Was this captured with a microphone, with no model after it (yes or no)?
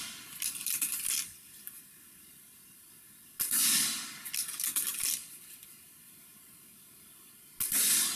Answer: yes